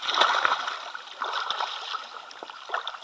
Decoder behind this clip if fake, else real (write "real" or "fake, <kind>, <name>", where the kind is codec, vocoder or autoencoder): real